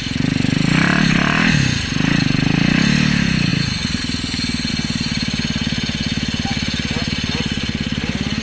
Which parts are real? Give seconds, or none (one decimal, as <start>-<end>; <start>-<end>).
0.0-8.4